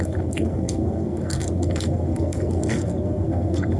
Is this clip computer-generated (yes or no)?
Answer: yes